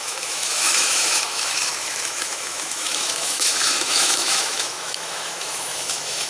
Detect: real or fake fake